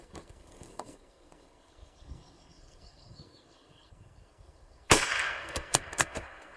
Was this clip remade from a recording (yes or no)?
yes